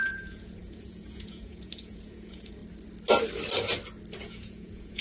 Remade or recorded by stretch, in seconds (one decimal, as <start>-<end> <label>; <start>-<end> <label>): 0.0-2.6 remade; 2.6-4.2 recorded; 4.2-5.0 remade